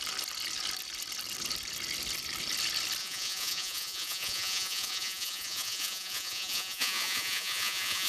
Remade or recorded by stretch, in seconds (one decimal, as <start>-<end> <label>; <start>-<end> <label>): 0.0-3.0 recorded; 3.0-8.1 remade